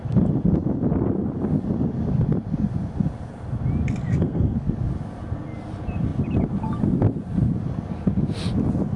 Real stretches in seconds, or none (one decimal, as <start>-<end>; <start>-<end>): 0.0-4.1; 4.7-9.0